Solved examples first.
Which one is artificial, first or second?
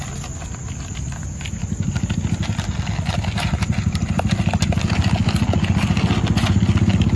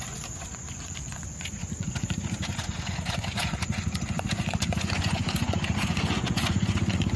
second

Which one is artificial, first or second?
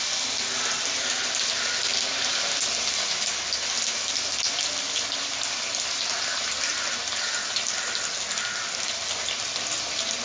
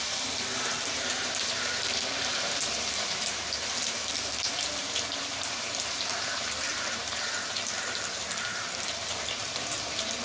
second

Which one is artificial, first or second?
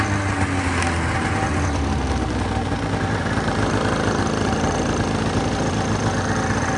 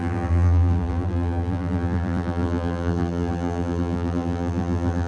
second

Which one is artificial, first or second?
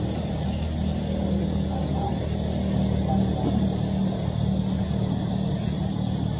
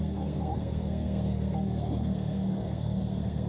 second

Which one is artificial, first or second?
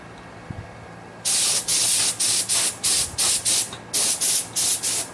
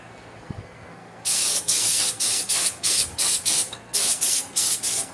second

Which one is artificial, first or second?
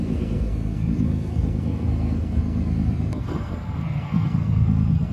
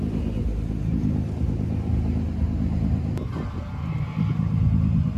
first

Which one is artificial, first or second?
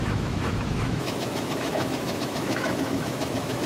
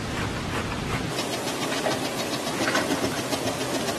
first